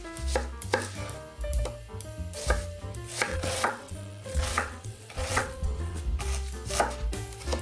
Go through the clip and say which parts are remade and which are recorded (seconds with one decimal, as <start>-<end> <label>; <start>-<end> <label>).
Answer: 0.0-3.3 recorded; 3.3-6.0 remade; 6.0-7.6 recorded